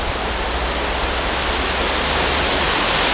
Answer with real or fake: real